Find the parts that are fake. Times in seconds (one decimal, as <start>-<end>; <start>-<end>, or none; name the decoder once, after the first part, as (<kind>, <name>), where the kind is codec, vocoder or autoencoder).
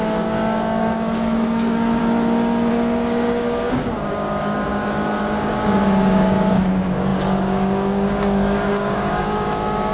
0.0-2.0 (codec, DAC); 2.7-9.9